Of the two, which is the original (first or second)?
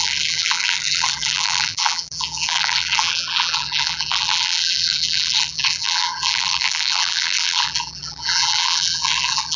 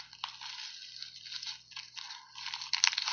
second